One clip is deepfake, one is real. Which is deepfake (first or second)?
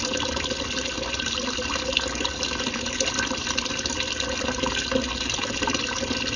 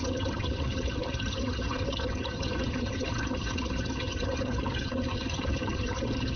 second